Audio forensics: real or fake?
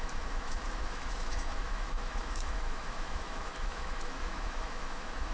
fake